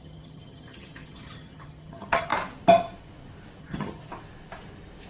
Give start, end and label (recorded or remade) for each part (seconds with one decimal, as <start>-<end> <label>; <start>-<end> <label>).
0.0-2.3 remade; 2.3-3.6 recorded; 3.6-4.1 remade; 4.1-5.1 recorded